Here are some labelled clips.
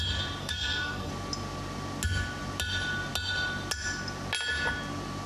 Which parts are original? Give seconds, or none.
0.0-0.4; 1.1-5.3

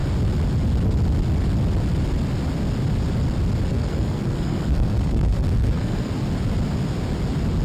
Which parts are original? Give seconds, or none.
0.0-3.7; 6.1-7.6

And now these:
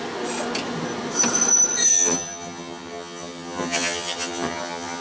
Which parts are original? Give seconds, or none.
0.0-1.9

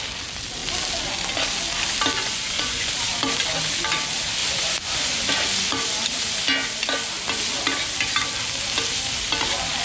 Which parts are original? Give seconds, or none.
0.0-2.2; 2.9-4.4; 5.2-9.8

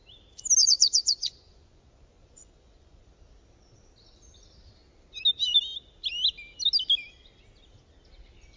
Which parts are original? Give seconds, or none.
0.0-0.6; 3.1-8.6

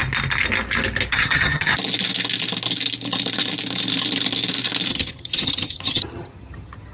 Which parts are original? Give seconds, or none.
0.0-1.1; 1.7-4.9